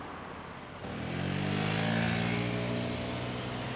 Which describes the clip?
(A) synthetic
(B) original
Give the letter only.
B